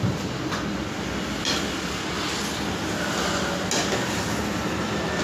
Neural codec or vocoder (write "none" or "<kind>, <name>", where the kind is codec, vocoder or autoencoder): none